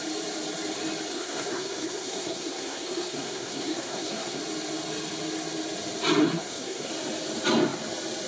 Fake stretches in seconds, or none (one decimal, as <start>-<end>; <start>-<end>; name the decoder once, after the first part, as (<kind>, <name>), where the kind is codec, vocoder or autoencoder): 1.1-4.4 (codec, SNAC); 6.2-6.9